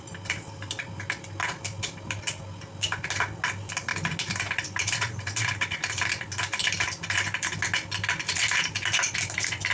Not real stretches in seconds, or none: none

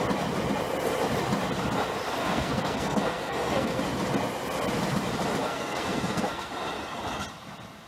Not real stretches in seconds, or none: 2.2-3.8; 5.4-6.5